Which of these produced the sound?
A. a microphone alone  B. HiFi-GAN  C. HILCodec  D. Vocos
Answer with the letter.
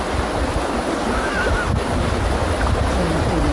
A